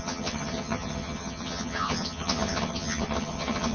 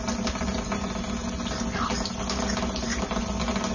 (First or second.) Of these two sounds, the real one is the second